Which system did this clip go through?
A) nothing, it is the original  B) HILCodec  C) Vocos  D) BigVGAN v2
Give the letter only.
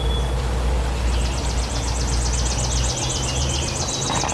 A